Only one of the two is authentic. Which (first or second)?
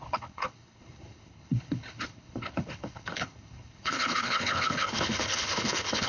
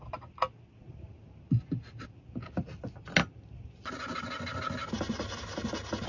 second